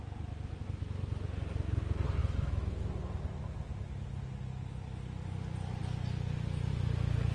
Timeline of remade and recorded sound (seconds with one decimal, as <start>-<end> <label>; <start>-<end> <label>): 0.0-2.2 recorded; 2.2-2.8 remade; 2.8-7.3 recorded